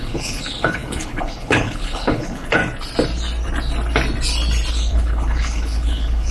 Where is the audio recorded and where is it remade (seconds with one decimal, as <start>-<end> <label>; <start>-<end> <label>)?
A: 0.0-2.6 remade; 2.6-4.7 recorded; 4.7-6.3 remade